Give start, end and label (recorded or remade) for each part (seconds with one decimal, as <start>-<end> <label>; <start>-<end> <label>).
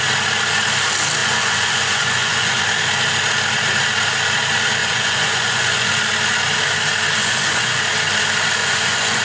0.0-1.2 recorded; 1.2-2.6 remade; 2.6-4.8 recorded; 4.8-5.9 remade; 5.9-7.2 recorded; 7.2-7.8 remade; 7.8-8.6 recorded; 8.6-9.2 remade